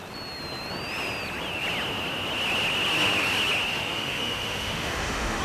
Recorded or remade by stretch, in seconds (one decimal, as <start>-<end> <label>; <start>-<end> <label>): 0.0-3.7 recorded; 3.7-5.4 remade